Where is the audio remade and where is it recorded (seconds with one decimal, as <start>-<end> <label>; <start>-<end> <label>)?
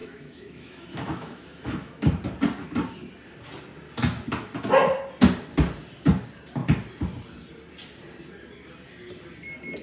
0.0-2.0 remade; 2.0-9.8 recorded